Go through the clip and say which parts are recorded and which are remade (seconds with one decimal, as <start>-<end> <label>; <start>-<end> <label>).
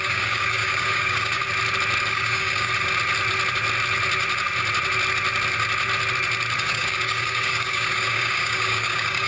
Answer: 0.0-1.4 remade; 1.4-2.1 recorded; 2.1-2.7 remade; 2.7-6.6 recorded; 6.6-9.3 remade